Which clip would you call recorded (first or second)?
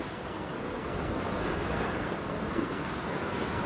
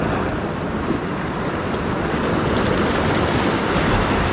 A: second